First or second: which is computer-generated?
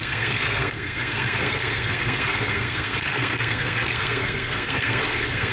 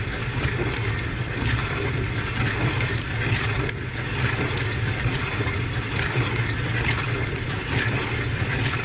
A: first